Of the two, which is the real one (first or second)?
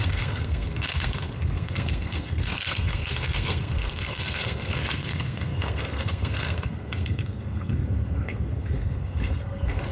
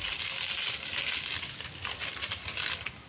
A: second